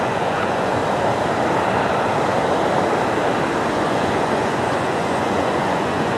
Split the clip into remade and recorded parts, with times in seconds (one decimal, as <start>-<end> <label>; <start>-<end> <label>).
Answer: 0.0-0.8 remade; 0.8-3.7 recorded; 3.7-6.2 remade